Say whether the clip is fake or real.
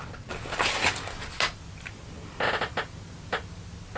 real